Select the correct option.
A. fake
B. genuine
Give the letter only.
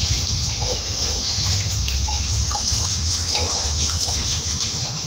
A